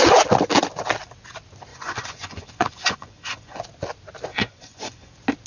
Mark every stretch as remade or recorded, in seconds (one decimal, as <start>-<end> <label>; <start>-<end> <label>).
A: 0.0-1.7 recorded; 1.7-3.6 remade; 3.6-4.3 recorded; 4.3-5.1 remade; 5.1-5.5 recorded